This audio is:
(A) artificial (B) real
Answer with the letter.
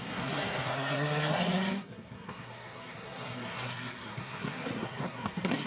A